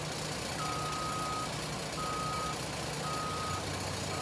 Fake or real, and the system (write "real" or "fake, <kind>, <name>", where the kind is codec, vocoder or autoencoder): real